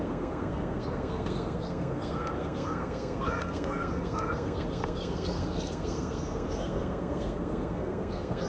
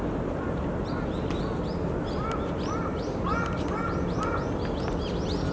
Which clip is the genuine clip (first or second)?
second